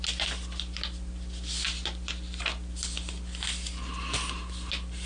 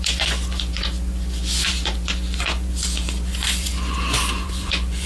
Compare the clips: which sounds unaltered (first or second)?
first